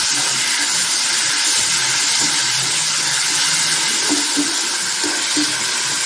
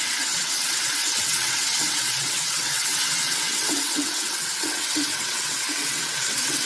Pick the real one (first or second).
first